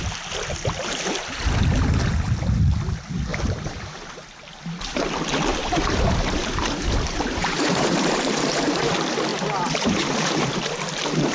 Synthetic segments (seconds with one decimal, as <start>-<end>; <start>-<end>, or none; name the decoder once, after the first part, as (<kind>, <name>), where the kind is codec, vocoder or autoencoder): 3.3-4.1 (vocoder, BigVGAN v2); 5.5-8.9; 9.3-10.5

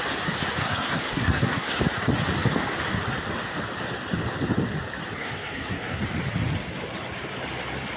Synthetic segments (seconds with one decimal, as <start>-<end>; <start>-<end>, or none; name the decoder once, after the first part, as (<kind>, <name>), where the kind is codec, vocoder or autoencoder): 0.6-1.8 (codec, SNAC); 5.2-6.0